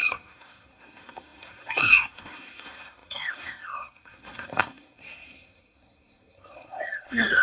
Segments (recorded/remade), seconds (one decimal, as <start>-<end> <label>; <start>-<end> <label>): 0.0-7.4 remade

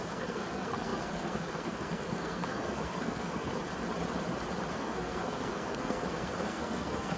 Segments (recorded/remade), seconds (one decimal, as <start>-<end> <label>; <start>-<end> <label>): 0.0-3.5 remade; 3.5-4.7 recorded; 4.7-7.2 remade